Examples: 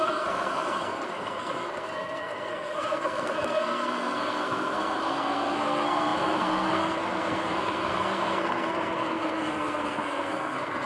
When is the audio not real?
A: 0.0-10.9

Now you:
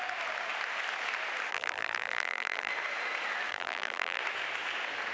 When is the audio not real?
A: 1.5-2.7; 3.5-4.2

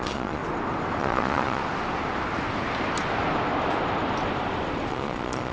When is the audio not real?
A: 0.0-0.4; 1.0-1.6; 4.9-5.5

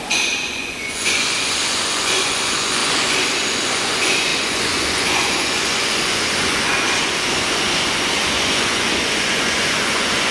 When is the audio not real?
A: 0.0-10.3